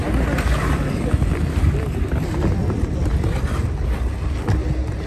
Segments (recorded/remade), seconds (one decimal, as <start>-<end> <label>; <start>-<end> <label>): 0.0-5.1 recorded